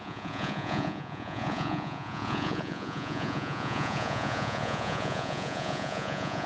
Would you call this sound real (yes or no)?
no